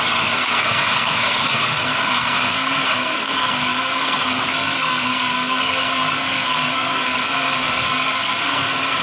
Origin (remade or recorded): remade